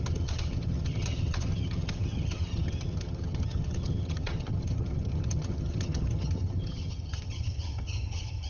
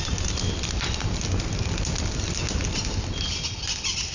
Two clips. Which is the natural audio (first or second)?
second